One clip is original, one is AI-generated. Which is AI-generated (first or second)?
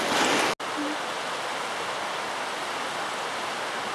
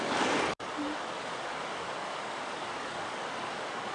second